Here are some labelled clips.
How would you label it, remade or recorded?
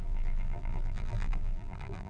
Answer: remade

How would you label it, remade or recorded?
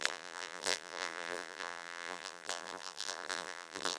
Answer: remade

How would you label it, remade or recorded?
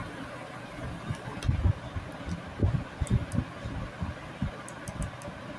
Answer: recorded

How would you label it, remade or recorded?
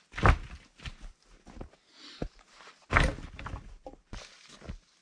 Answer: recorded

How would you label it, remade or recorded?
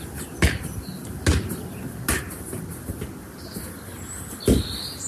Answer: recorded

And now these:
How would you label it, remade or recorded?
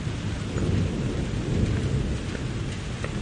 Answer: recorded